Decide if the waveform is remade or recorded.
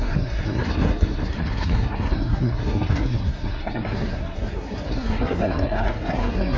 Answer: remade